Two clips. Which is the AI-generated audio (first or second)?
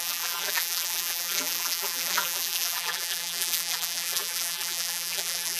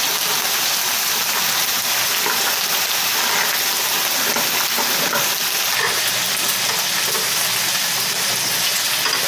first